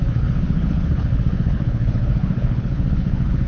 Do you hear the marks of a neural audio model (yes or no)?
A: yes